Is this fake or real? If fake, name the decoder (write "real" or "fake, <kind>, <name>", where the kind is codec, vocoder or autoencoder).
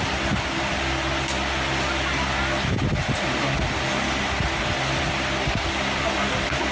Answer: real